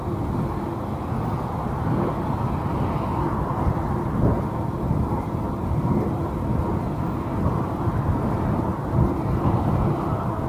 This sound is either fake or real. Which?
real